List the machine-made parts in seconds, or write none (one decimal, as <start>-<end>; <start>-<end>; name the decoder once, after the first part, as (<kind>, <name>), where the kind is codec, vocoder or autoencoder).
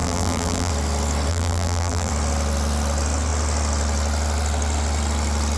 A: 0.0-0.7 (vocoder, BigVGAN v2); 1.3-2.1